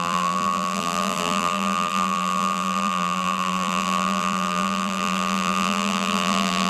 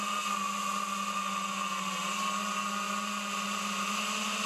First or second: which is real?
second